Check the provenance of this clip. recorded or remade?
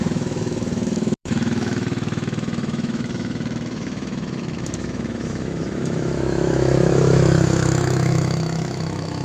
remade